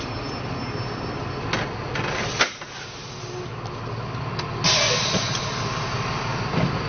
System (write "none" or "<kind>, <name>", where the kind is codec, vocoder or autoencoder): none